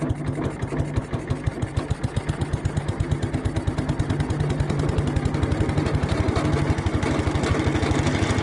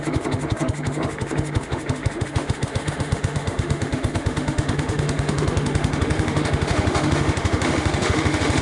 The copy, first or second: second